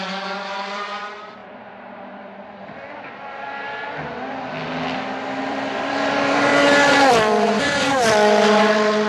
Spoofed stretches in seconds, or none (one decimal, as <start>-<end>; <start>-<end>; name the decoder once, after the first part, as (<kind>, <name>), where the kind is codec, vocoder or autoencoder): 0.0-1.4 (vocoder, BigVGAN v2); 5.4-6.5; 7.1-9.1